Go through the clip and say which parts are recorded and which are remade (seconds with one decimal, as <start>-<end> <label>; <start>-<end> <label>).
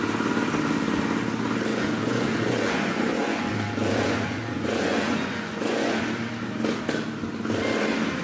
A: 0.0-1.7 recorded; 1.7-5.9 remade; 5.9-8.2 recorded